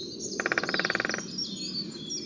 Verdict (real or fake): real